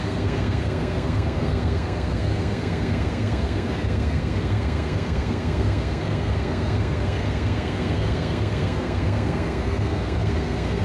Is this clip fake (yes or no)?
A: yes